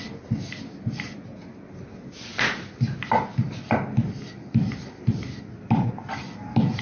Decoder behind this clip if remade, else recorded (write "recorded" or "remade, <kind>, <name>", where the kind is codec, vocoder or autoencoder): recorded